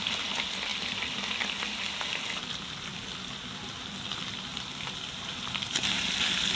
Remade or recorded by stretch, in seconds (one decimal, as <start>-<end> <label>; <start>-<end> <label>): 0.0-6.6 recorded